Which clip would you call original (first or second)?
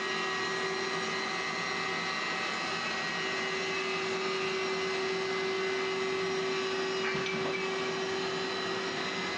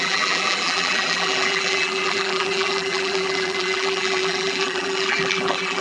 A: first